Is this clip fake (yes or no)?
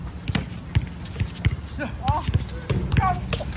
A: no